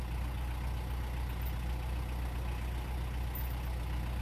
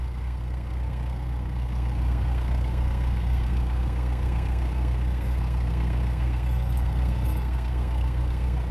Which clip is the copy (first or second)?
second